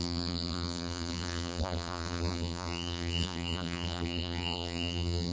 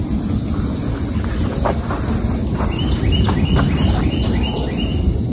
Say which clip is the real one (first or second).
second